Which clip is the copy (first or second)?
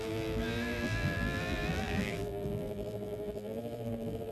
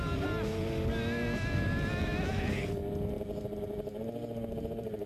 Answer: first